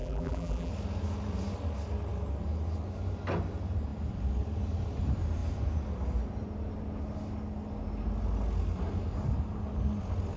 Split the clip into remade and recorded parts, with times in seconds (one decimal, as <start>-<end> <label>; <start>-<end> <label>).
0.0-0.7 remade; 0.7-10.4 recorded